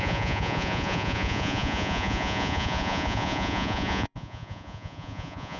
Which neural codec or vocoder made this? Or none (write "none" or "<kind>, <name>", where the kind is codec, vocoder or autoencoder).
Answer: vocoder, Vocos